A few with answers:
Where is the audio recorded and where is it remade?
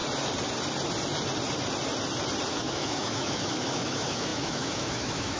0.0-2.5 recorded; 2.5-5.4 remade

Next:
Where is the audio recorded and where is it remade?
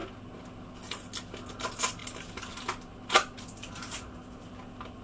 0.0-5.0 recorded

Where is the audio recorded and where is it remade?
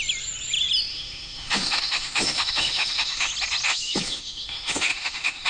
0.0-0.9 recorded; 0.9-3.3 remade; 3.3-3.7 recorded; 3.7-5.5 remade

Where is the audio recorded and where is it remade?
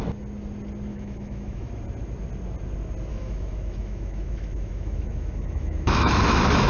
0.0-0.9 recorded; 0.9-1.7 remade; 1.7-3.1 recorded; 3.1-6.7 remade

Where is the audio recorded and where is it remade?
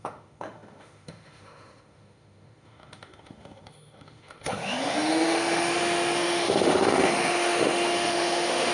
0.0-8.7 remade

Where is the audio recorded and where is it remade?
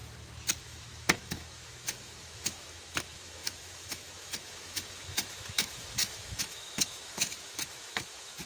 0.0-0.6 recorded; 0.6-8.5 remade